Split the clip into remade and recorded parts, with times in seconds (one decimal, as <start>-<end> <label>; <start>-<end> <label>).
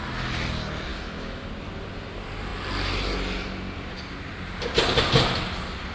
0.0-0.9 recorded; 0.9-1.5 remade; 1.5-5.9 recorded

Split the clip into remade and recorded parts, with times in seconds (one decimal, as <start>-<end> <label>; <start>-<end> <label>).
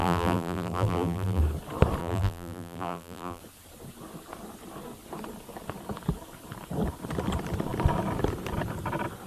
0.0-1.4 remade; 1.4-2.0 recorded; 2.0-3.4 remade; 3.4-9.3 recorded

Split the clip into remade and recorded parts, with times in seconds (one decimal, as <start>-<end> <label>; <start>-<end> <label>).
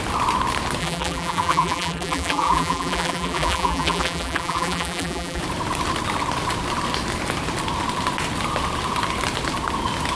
0.0-0.8 recorded; 0.8-5.4 remade; 5.4-10.1 recorded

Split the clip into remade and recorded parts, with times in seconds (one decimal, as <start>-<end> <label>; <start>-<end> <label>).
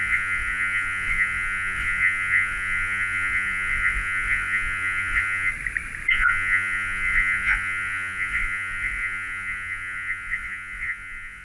0.0-5.5 remade; 5.5-6.1 recorded; 6.1-11.4 remade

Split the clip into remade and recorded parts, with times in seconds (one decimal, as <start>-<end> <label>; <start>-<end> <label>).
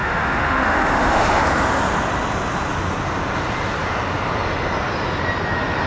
0.0-1.4 remade; 1.4-5.9 recorded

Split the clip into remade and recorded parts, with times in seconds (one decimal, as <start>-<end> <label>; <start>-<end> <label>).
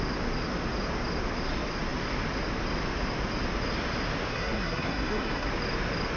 0.0-4.3 recorded; 4.3-5.5 remade; 5.5-6.2 recorded